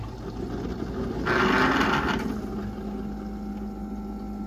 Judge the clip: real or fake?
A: real